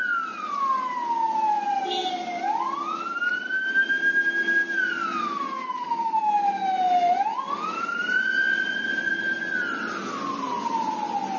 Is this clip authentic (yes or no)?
yes